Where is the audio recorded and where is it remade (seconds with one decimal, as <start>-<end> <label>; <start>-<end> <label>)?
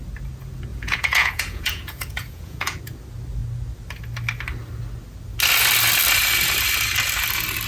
0.0-0.7 recorded; 0.7-2.8 remade; 2.8-7.7 recorded